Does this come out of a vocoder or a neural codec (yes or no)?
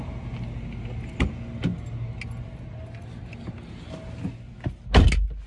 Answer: no